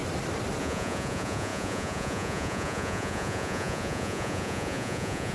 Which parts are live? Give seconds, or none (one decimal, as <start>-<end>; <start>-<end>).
0.0-0.6

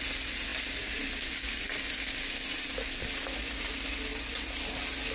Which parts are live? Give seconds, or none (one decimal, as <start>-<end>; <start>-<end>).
0.0-5.1

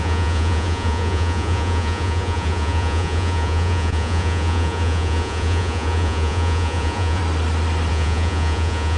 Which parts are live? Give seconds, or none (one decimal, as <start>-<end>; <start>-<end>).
7.2-7.9

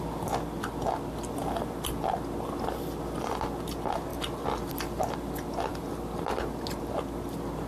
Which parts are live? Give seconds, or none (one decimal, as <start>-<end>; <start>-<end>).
0.0-7.7

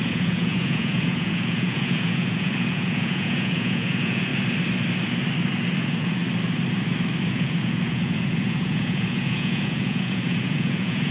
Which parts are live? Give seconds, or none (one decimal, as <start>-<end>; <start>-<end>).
4.3-5.8; 6.2-7.3

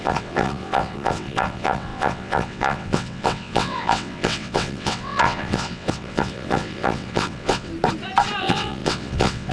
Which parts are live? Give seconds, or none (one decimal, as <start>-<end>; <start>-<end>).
7.7-8.4

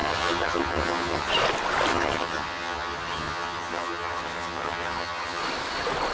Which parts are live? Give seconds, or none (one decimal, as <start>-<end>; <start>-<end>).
1.3-1.9; 5.4-6.1